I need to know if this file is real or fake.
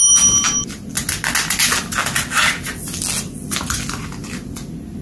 real